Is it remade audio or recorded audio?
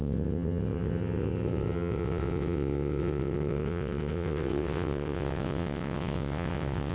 remade